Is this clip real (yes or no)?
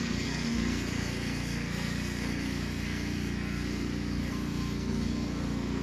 no